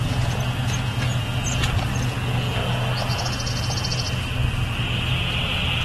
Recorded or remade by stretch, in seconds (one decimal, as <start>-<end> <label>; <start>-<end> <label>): 0.0-5.8 recorded